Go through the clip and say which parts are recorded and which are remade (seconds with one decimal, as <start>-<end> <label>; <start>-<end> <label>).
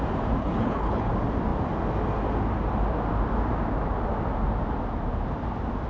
0.0-0.4 recorded; 0.4-1.1 remade; 1.1-5.9 recorded